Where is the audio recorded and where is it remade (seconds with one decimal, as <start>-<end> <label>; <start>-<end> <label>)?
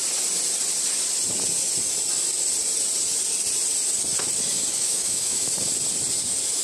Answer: 0.0-4.7 recorded; 4.7-5.5 remade; 5.5-6.6 recorded